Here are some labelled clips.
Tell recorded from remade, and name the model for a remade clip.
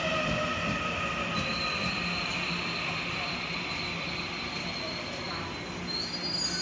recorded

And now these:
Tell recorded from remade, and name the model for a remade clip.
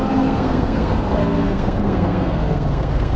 remade, codec, SNAC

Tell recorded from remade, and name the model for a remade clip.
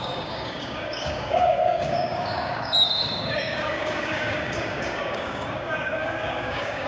remade, codec, DAC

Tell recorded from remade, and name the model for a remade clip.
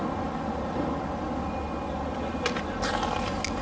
recorded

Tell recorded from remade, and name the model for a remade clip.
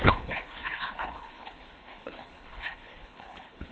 remade, codec, HILCodec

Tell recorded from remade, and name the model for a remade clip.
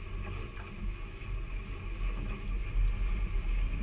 recorded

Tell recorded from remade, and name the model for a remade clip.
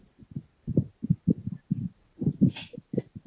recorded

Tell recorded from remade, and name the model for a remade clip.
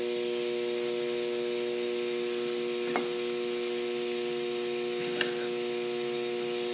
recorded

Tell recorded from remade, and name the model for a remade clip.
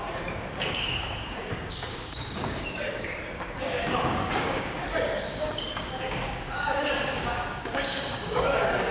remade, codec, DAC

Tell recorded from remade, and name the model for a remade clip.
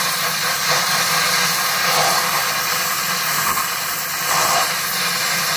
recorded